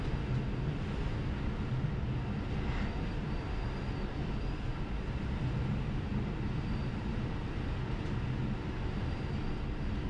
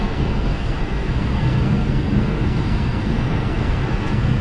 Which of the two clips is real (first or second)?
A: first